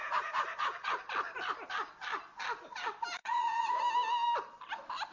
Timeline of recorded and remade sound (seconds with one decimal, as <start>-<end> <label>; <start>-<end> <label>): 0.0-1.0 remade; 1.0-3.2 recorded; 3.2-3.8 remade; 3.8-5.1 recorded